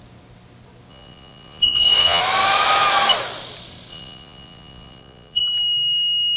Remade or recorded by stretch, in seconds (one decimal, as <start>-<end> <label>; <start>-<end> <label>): 0.0-0.9 recorded; 0.9-2.2 remade; 2.2-3.9 recorded; 3.9-5.4 remade; 5.4-6.4 recorded